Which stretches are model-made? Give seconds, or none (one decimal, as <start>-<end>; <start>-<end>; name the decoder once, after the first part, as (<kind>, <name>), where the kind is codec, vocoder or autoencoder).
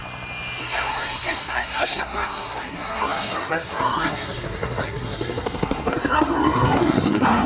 0.6-7.5 (codec, SNAC)